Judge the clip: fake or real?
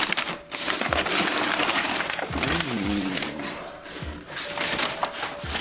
real